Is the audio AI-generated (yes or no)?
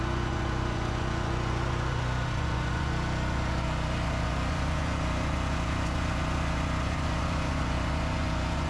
yes